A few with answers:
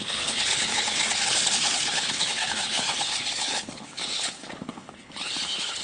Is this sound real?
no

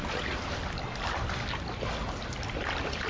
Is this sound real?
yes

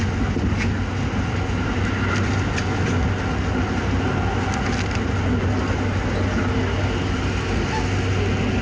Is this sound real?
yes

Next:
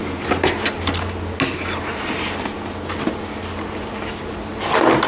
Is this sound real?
yes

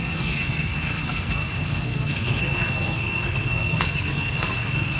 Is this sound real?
no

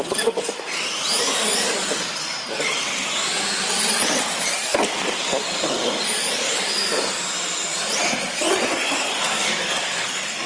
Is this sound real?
yes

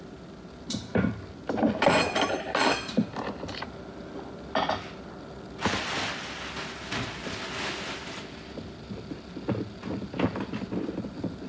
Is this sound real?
yes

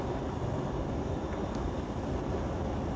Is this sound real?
yes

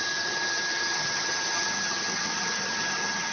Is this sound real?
no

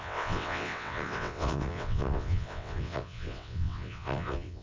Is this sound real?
no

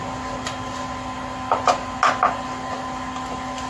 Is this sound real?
yes